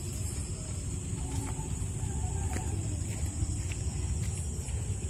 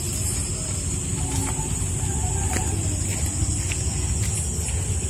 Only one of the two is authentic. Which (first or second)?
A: second